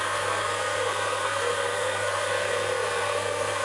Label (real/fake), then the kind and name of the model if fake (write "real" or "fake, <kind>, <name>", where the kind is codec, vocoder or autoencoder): fake, codec, SNAC